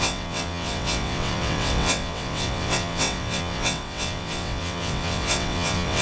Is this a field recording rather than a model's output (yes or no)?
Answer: no